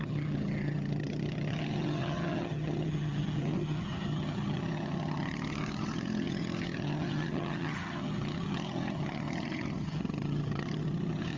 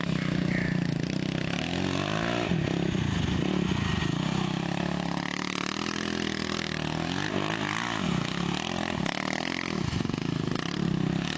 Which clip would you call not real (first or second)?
first